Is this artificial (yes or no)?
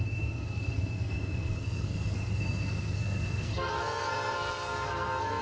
yes